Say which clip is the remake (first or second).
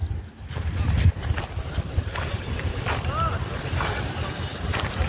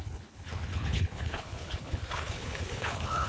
second